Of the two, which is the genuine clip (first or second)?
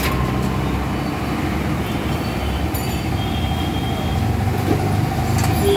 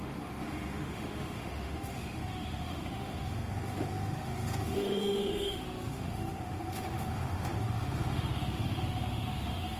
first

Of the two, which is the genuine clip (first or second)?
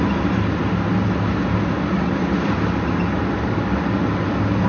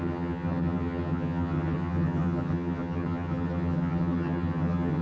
first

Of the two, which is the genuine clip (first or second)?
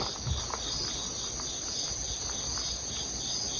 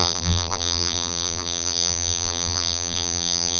first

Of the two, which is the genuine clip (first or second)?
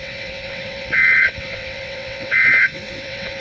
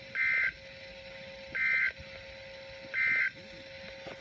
second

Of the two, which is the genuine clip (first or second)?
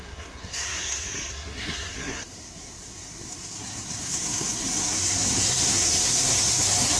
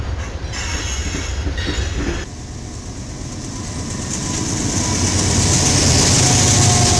second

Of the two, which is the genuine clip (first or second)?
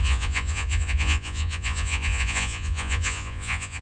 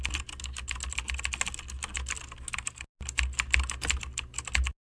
second